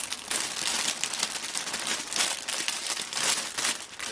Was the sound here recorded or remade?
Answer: recorded